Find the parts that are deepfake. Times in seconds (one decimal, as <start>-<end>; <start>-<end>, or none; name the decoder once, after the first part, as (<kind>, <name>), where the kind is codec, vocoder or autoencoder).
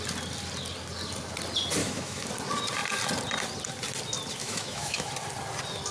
1.8-2.3 (autoencoder, DAC-VAE); 4.4-5.1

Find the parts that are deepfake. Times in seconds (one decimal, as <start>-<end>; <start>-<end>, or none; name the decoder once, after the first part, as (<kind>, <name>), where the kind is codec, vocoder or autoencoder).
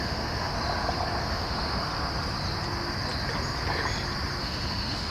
0.0-0.5 (autoencoder, DAC-VAE); 1.2-1.9; 4.4-5.1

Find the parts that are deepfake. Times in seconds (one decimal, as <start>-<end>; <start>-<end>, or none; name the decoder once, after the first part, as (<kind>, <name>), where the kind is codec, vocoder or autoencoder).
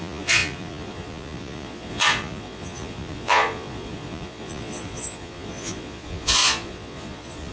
0.0-7.5 (vocoder, Vocos)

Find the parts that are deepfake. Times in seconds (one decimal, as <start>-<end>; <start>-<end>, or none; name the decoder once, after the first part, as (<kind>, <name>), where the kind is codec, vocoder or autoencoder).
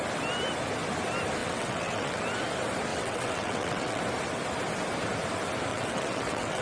1.4-2.2 (vocoder, WaveNeXt); 2.9-4.0; 5.7-6.6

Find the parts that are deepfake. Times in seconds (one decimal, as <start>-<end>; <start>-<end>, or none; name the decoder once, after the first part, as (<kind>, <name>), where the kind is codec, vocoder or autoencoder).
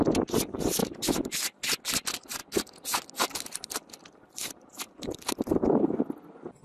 none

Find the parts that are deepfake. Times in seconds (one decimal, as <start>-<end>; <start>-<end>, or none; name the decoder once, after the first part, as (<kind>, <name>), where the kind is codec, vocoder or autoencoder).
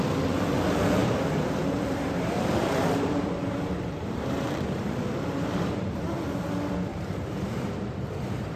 1.0-6.1 (vocoder, BigVGAN v2); 6.9-8.6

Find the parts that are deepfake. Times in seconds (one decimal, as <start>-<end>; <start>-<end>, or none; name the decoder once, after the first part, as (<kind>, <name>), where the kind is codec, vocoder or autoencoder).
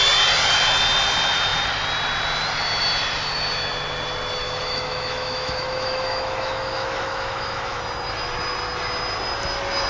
4.4-7.8 (autoencoder, DAC-VAE)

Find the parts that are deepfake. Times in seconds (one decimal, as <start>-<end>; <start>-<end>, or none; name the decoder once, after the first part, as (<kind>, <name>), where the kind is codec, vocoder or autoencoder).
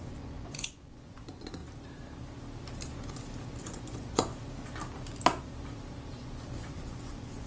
0.0-1.6 (vocoder, Vocos); 3.6-4.3; 6.1-7.5